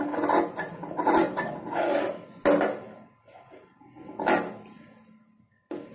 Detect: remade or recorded recorded